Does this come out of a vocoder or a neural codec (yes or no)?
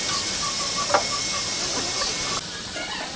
no